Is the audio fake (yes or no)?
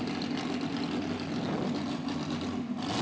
no